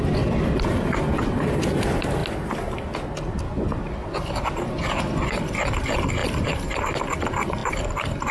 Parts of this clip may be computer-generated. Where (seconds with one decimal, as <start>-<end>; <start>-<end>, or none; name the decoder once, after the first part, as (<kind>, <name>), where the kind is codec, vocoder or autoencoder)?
6.2-6.8 (vocoder, BigVGAN v2); 7.6-8.3